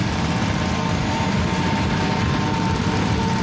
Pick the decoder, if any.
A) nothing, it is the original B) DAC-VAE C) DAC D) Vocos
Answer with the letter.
A